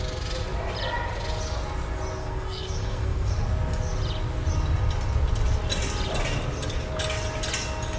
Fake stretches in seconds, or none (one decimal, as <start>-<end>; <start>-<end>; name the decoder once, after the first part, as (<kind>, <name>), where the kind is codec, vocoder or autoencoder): 2.2-3.3 (codec, SNAC)